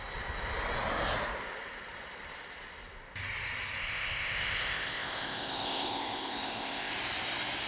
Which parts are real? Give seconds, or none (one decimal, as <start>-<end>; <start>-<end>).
0.0-3.8; 6.9-7.7